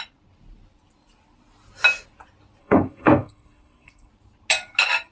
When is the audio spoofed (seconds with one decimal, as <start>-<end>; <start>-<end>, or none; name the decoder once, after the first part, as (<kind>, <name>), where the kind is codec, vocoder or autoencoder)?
2.6-4.1 (codec, SNAC)